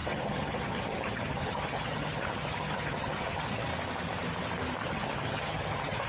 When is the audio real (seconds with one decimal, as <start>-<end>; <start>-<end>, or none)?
3.7-4.8